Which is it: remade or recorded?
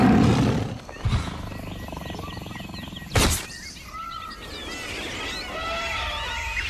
recorded